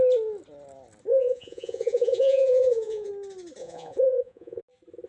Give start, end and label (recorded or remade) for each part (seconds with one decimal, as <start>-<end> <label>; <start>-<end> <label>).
0.0-1.1 recorded; 1.1-3.1 remade; 3.1-3.6 recorded; 3.6-4.6 remade; 4.6-5.1 recorded